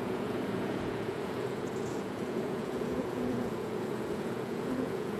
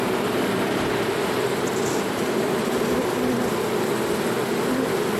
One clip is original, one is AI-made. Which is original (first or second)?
second